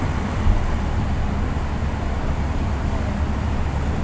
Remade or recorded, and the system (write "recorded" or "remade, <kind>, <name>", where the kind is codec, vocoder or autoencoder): recorded